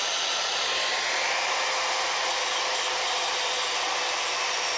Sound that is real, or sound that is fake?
real